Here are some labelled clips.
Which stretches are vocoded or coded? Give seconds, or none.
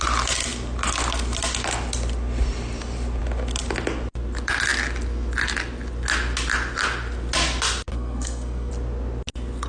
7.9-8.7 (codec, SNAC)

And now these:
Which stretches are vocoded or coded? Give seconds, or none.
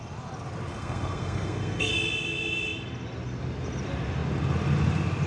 0.7-1.9 (codec, SNAC)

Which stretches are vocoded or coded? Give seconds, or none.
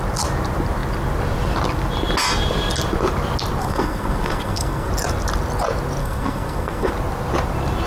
3.6-4.9 (codec, SNAC); 6.0-6.9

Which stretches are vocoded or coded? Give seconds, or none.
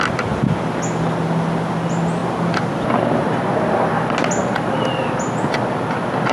none